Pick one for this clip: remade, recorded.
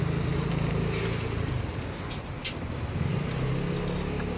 recorded